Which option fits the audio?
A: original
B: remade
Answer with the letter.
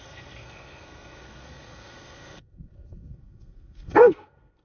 B